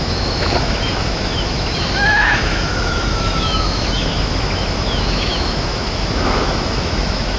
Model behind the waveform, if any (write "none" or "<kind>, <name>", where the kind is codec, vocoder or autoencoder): autoencoder, DAC-VAE